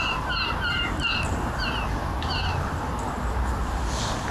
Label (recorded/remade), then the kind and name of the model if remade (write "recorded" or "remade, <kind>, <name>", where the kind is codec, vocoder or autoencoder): recorded